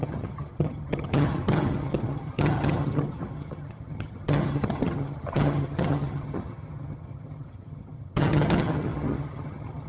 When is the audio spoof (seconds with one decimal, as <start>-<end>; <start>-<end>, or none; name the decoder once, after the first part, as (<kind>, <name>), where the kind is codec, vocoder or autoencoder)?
0.0-9.9 (vocoder, HiFi-GAN)